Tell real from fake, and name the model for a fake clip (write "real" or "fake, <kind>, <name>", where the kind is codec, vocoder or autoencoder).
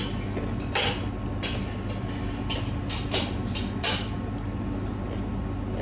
real